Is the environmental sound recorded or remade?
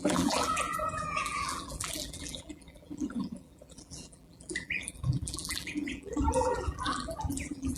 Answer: remade